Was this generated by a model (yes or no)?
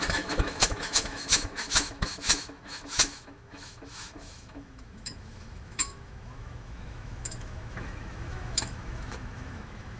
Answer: yes